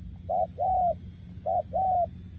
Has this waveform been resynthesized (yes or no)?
no